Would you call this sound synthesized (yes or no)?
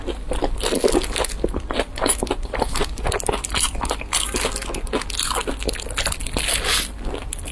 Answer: no